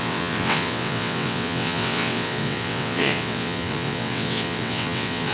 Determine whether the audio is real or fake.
fake